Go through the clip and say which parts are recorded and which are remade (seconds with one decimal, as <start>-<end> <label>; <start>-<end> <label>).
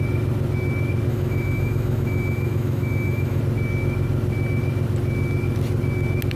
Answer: 0.0-1.1 recorded; 1.1-3.4 remade; 3.4-6.4 recorded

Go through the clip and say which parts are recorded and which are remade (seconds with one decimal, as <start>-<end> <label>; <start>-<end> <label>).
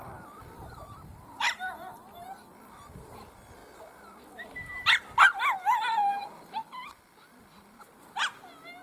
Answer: 0.0-3.6 remade; 3.6-5.6 recorded; 5.6-8.8 remade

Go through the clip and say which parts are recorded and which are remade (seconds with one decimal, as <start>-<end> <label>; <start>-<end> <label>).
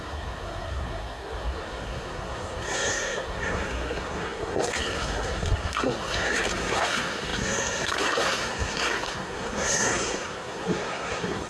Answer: 0.0-11.5 remade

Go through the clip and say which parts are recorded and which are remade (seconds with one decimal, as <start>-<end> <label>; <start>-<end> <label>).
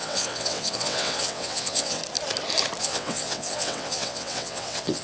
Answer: 0.0-2.0 remade; 2.0-2.8 recorded; 2.8-5.0 remade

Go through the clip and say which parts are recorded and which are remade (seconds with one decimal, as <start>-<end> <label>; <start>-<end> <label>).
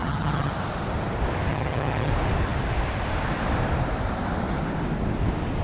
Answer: 0.0-0.5 remade; 0.5-1.5 recorded; 1.5-2.1 remade; 2.1-5.6 recorded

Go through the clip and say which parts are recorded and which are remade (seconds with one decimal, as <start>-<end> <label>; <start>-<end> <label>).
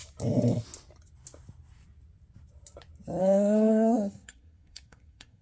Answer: 0.0-3.2 recorded; 3.2-5.4 remade